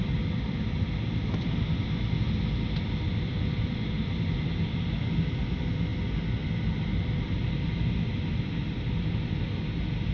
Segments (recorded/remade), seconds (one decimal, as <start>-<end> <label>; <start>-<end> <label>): 0.0-10.1 recorded